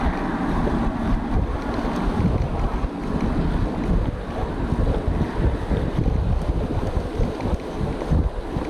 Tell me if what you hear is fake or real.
real